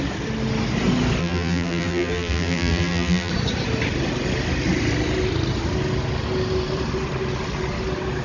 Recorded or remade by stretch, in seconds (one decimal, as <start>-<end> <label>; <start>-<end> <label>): 0.0-1.2 recorded; 1.2-3.3 remade; 3.3-8.2 recorded